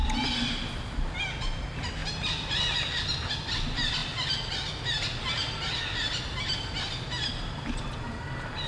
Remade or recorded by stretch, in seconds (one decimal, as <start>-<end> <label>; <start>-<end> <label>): 0.0-8.7 recorded